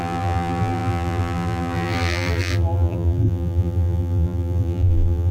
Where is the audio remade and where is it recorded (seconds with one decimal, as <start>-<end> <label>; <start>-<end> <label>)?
0.0-5.3 remade